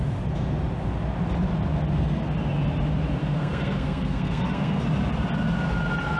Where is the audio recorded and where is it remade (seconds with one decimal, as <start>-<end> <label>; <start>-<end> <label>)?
0.0-3.2 recorded; 3.2-4.8 remade; 4.8-6.2 recorded